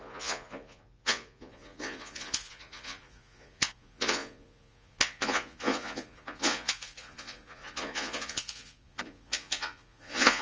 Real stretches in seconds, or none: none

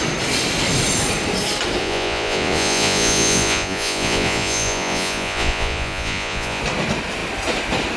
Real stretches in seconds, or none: 0.0-1.8; 6.6-8.0

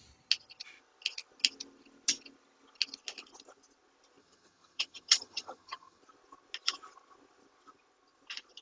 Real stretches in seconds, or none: 0.0-4.2; 6.0-8.6

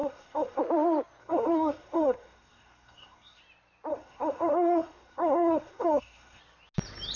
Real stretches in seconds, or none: 0.6-1.2; 3.4-3.9; 6.4-7.2